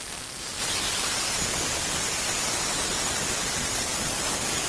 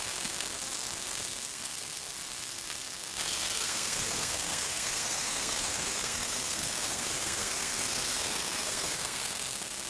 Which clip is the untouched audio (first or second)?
first